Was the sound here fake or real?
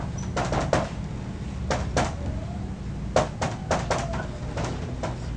real